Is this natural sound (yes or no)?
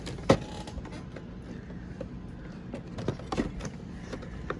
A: yes